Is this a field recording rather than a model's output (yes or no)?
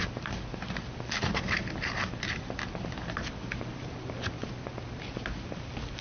yes